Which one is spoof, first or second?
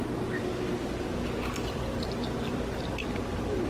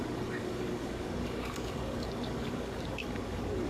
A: second